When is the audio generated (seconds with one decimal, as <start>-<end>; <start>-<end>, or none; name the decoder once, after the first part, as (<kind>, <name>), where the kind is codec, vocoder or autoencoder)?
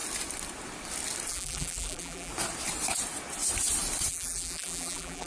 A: 1.3-2.3 (vocoder, BigVGAN v2); 4.1-5.3